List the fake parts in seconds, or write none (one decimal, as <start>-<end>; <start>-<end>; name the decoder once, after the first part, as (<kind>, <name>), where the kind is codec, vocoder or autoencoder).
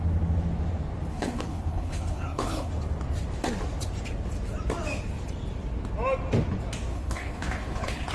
1.1-2.7 (codec, HILCodec); 6.9-8.1